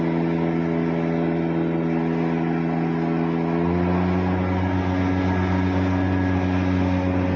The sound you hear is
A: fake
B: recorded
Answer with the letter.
B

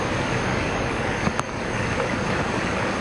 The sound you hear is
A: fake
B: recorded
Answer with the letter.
A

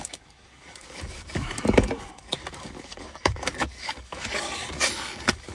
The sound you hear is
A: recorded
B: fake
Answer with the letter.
B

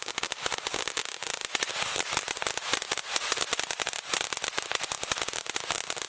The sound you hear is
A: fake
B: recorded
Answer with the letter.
B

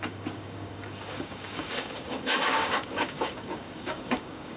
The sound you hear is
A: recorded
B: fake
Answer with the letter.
B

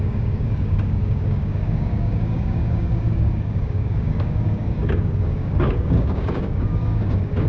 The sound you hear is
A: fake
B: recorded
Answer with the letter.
A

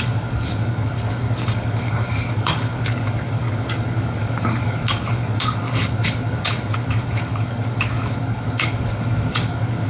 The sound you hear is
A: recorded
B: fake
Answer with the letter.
B